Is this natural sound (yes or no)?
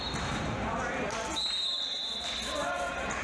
yes